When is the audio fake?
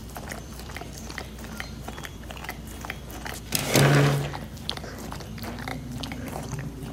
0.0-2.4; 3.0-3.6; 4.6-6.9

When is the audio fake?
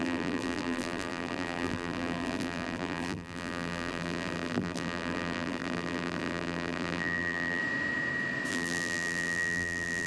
0.0-7.6; 8.5-10.1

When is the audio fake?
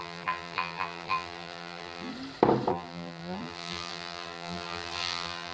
0.0-2.1; 2.7-5.5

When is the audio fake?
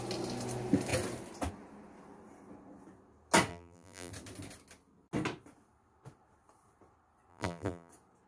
3.5-4.1; 7.3-7.9